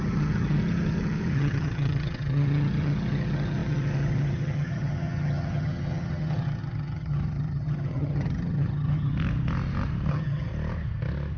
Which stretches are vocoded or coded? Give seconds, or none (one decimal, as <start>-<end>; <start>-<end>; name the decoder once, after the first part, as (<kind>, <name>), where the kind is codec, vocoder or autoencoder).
0.0-9.1 (vocoder, HiFi-GAN); 10.1-10.5